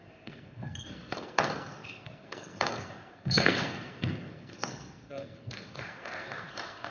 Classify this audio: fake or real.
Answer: fake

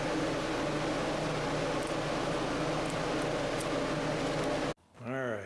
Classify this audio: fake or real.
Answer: real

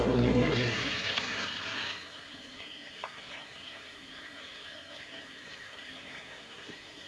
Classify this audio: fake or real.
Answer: fake